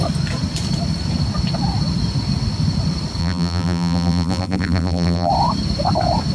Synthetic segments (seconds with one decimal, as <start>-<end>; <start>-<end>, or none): 3.2-5.3